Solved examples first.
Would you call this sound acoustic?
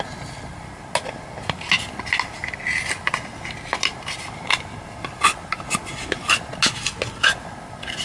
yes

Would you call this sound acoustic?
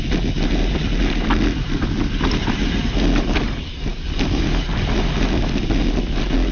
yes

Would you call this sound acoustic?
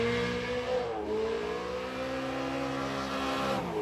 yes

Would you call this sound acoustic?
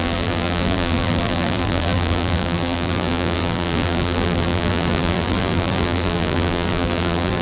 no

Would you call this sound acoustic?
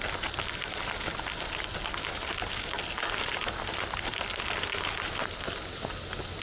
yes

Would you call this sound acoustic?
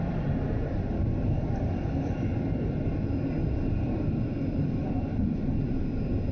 no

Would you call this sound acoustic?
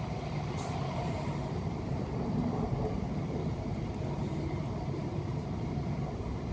no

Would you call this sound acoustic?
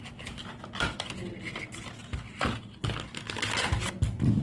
yes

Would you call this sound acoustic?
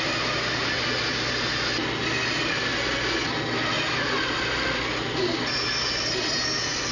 yes